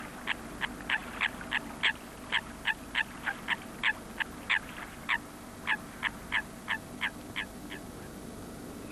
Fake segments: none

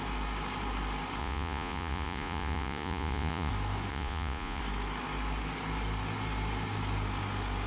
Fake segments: 1.2-3.5 (vocoder, Vocos); 3.9-4.6

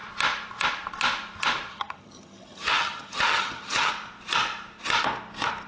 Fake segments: 1.7-3.9 (vocoder, HiFi-GAN)

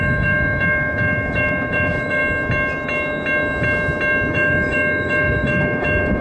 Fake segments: 0.0-2.2 (autoencoder, DAC-VAE); 4.3-6.2

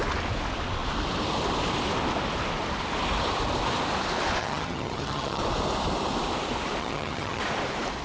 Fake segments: 4.4-5.4 (vocoder, HiFi-GAN); 6.8-7.4

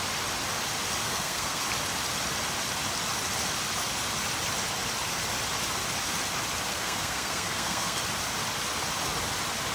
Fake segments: 1.0-1.6 (codec, SNAC); 6.7-8.0

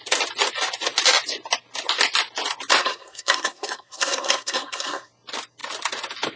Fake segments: 2.8-5.1 (codec, SNAC)

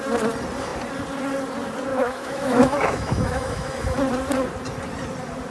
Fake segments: 1.9-3.7 (autoencoder, DAC-VAE)